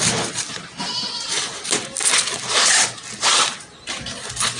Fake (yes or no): no